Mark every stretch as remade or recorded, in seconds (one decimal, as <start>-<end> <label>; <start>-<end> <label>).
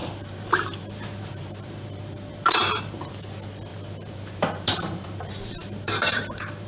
0.0-3.1 remade; 3.1-3.7 recorded; 3.7-6.7 remade